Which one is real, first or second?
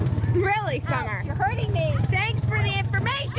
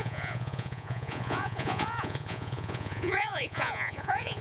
first